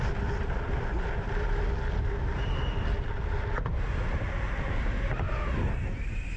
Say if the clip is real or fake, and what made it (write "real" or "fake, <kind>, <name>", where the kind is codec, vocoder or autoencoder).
real